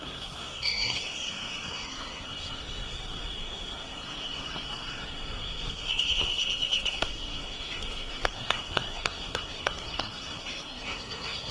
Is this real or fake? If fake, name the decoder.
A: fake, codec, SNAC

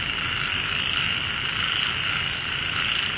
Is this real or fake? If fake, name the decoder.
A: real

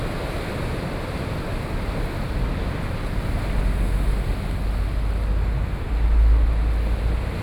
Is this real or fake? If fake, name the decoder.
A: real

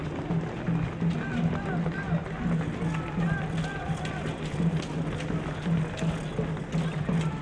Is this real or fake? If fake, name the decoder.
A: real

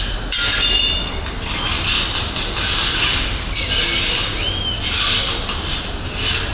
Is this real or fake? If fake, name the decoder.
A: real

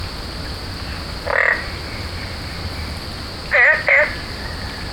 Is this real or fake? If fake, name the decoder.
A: real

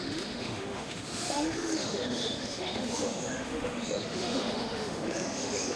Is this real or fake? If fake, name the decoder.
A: fake, autoencoder, DAC-VAE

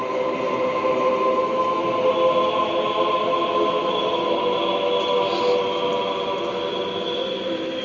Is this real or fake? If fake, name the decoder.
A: real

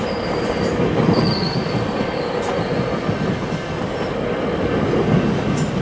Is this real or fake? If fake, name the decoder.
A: real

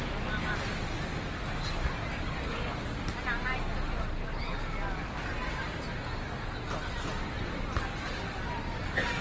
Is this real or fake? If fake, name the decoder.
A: real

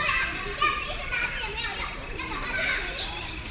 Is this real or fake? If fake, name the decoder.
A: fake, vocoder, BigVGAN v2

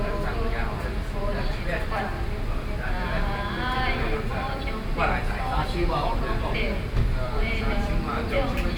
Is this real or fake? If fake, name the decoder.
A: fake, vocoder, BigVGAN v2